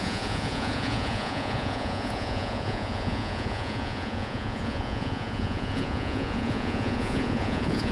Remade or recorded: remade